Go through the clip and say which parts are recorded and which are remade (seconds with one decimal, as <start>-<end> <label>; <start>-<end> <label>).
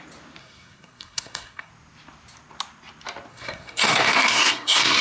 0.0-0.4 recorded; 0.4-1.7 remade; 1.7-3.3 recorded; 3.3-5.0 remade